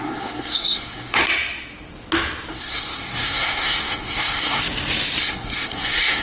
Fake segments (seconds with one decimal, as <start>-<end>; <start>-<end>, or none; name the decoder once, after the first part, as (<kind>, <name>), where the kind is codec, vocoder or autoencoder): 0.0-1.2 (codec, SNAC); 2.5-4.6; 5.2-6.2